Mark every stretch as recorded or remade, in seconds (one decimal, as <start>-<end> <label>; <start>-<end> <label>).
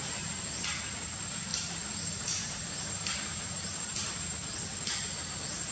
0.0-1.5 recorded; 1.5-4.5 remade; 4.5-5.7 recorded